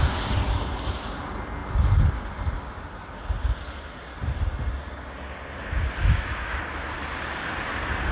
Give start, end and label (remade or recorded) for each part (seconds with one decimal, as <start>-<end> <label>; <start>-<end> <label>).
0.0-6.0 recorded; 6.0-6.6 remade; 6.6-8.1 recorded